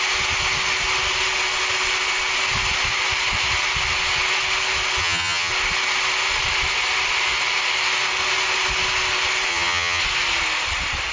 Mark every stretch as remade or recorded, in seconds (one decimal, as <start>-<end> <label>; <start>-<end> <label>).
0.0-5.0 recorded; 5.0-5.5 remade; 5.5-9.5 recorded; 9.5-10.0 remade; 10.0-11.1 recorded